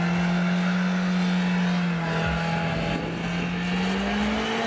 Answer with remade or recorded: recorded